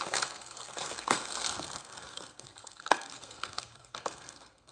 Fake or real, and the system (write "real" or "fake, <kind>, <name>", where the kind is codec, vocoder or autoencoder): fake, codec, SNAC